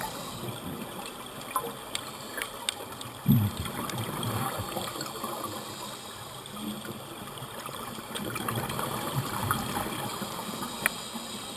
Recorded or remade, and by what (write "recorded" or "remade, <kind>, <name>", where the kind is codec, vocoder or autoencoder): recorded